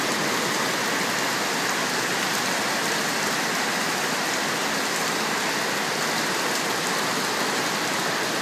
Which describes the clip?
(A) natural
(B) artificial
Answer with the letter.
A